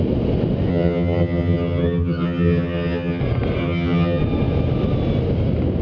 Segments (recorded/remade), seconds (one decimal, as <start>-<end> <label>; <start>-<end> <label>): 0.0-0.7 recorded; 0.7-3.2 remade; 3.2-3.6 recorded; 3.6-4.2 remade; 4.2-5.8 recorded